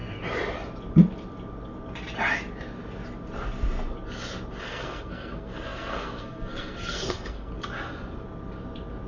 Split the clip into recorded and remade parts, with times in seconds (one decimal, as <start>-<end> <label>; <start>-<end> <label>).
0.0-4.6 recorded; 4.6-7.5 remade; 7.5-9.1 recorded